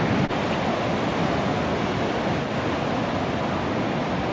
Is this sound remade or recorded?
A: recorded